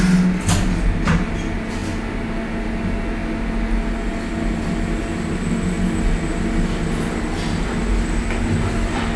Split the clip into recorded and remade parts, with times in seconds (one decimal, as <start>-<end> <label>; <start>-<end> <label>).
0.0-9.2 recorded